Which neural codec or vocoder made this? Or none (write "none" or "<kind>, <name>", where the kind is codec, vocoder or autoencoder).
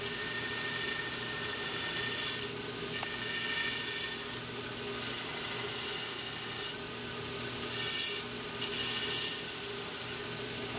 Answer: none